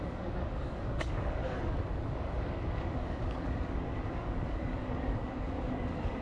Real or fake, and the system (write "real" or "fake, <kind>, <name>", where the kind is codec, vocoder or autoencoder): fake, codec, DAC